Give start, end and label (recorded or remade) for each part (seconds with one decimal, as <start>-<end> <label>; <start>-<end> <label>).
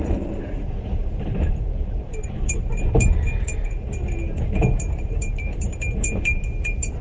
0.0-7.0 remade